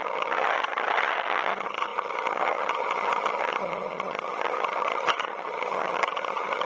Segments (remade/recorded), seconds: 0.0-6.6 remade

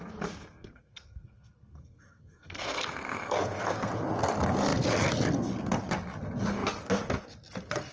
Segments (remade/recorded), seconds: 0.0-0.4 recorded; 0.4-3.9 remade; 3.9-7.9 recorded

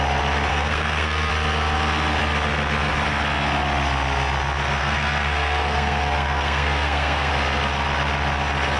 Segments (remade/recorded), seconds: 0.0-0.5 recorded; 0.5-1.3 remade; 1.3-4.8 recorded; 4.8-7.3 remade; 7.3-8.8 recorded

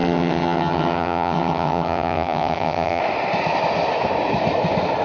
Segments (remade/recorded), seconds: 0.0-3.0 remade; 3.0-5.0 recorded